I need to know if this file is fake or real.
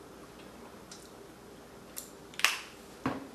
real